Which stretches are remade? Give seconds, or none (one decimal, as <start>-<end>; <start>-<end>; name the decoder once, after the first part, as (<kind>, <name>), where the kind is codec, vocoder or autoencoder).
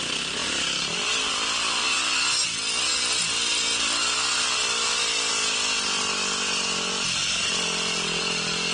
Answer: none